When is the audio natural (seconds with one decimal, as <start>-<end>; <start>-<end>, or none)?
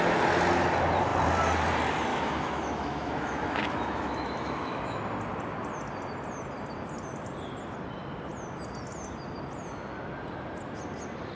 0.0-2.1; 5.0-11.3